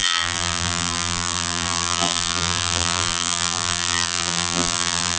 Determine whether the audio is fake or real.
fake